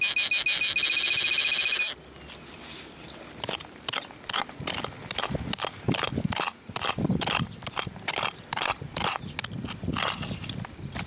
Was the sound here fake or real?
real